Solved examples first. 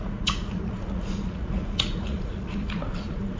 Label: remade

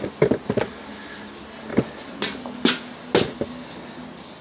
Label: recorded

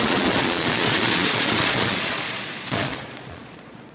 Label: remade